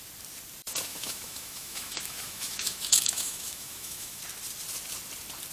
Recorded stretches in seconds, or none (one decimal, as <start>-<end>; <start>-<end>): 0.0-0.9; 4.2-5.5